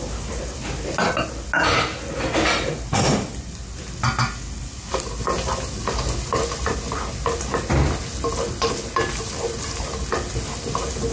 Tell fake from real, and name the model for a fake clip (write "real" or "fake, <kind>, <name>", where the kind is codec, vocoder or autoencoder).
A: real